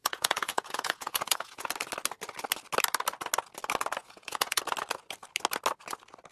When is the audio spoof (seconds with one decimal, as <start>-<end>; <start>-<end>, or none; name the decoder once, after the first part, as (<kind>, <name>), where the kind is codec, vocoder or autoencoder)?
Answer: 0.0-1.7 (vocoder, Vocos); 4.0-4.6